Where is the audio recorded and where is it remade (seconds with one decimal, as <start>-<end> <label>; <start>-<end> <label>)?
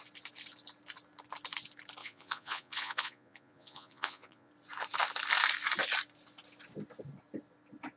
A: 0.0-2.0 recorded; 2.0-4.5 remade; 4.5-8.0 recorded